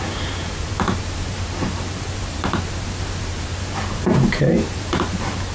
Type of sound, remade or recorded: remade